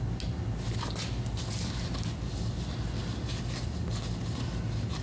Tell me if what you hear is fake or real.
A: real